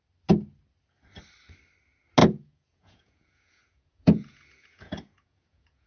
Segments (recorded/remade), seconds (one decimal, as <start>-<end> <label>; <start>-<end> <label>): 0.0-2.2 recorded; 2.2-5.9 remade